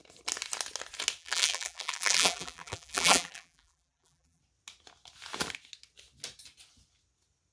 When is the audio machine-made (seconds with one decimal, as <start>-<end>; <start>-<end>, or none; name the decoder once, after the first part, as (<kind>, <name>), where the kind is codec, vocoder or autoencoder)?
1.2-4.4 (vocoder, BigVGAN v2)